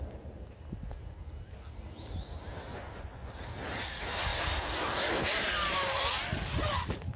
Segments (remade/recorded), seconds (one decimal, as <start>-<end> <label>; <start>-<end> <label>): 0.0-2.7 recorded; 2.7-3.3 remade; 3.3-7.2 recorded